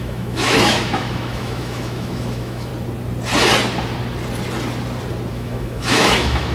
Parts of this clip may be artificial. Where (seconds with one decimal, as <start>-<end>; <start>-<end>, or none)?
0.0-2.7; 5.3-6.5